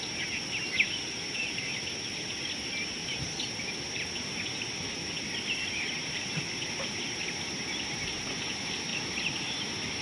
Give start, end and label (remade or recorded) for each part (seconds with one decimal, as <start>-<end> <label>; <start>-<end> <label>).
0.0-10.0 recorded